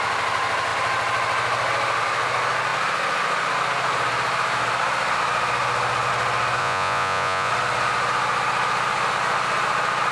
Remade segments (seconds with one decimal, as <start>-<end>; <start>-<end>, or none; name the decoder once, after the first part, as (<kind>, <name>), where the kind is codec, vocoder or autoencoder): 6.6-7.5 (vocoder, Vocos)